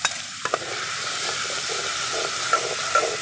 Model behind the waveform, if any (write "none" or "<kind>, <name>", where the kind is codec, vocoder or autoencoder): vocoder, BigVGAN v2